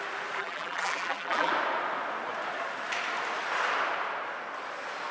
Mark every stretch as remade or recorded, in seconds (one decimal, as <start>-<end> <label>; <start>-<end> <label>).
0.0-0.4 recorded; 0.4-1.5 remade; 1.5-5.1 recorded